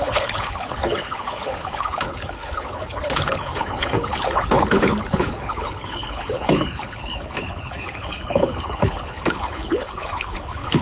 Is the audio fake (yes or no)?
yes